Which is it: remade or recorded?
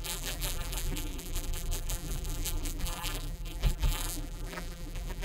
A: remade